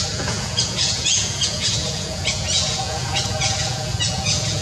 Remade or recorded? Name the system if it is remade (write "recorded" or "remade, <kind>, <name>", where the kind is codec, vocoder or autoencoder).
remade, vocoder, Vocos